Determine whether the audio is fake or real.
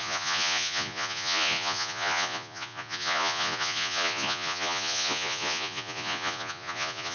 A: fake